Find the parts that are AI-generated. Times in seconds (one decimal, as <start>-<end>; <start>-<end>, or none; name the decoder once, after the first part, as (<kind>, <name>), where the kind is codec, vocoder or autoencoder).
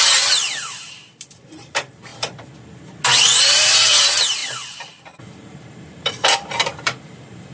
0.0-2.1 (vocoder, BigVGAN v2); 3.4-4.4; 5.2-7.5